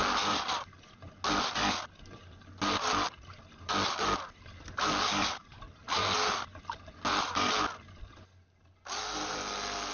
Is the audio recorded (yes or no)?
yes